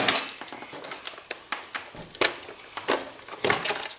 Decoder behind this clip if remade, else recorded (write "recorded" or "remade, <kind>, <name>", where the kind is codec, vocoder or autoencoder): recorded